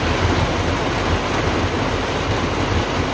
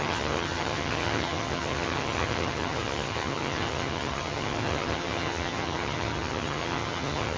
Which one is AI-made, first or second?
second